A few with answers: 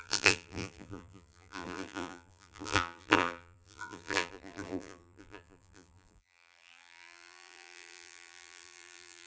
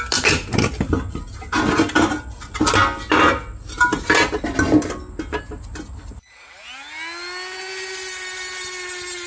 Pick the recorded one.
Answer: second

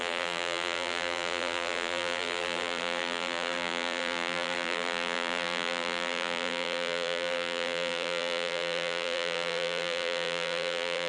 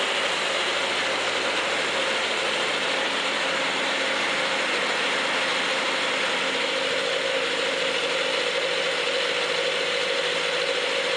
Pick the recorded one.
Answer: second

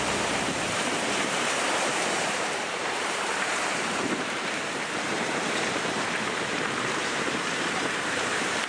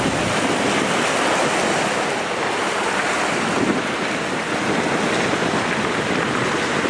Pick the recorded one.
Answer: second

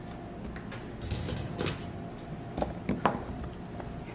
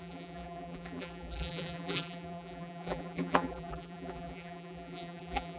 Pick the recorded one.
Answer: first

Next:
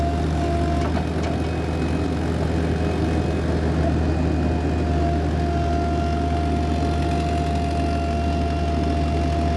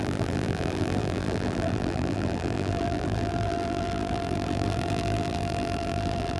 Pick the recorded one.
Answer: first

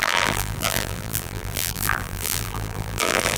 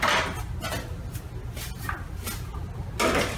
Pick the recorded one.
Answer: second